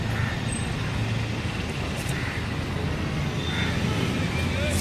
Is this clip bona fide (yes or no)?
yes